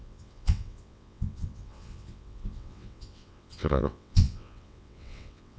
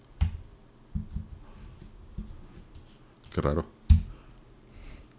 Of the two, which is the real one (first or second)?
second